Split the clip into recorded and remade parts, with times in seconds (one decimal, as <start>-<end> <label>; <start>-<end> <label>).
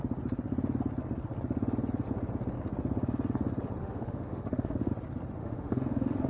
0.0-3.8 recorded; 3.8-4.9 remade; 4.9-5.4 recorded; 5.4-6.3 remade